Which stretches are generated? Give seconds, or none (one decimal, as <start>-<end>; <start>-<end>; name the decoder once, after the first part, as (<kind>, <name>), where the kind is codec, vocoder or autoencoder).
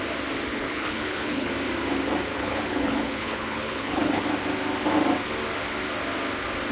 0.5-1.5 (codec, HILCodec); 2.3-4.2